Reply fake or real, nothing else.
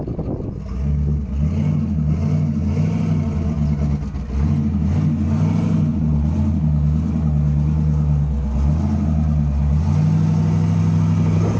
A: real